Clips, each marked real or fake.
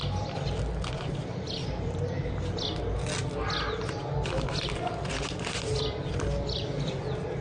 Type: real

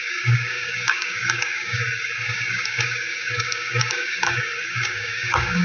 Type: fake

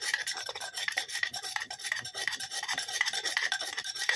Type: fake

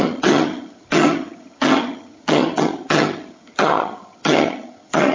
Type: fake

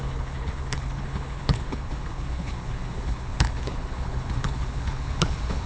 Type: fake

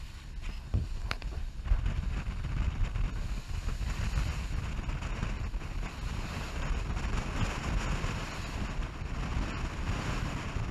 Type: real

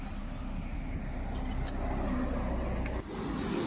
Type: real